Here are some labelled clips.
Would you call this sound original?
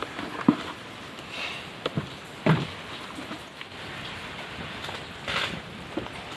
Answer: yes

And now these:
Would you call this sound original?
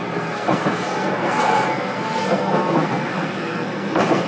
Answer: no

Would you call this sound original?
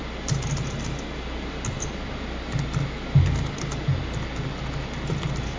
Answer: yes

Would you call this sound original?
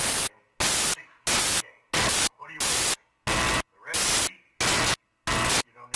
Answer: yes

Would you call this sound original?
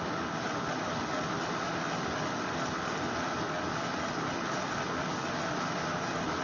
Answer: yes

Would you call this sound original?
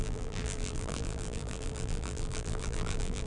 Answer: no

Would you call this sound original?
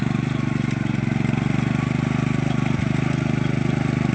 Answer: yes